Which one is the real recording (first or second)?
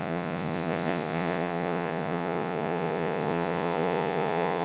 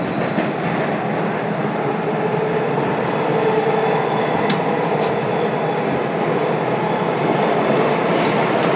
second